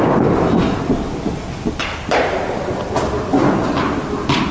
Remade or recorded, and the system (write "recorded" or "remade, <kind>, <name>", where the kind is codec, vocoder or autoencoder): recorded